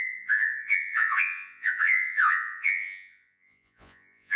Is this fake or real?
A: fake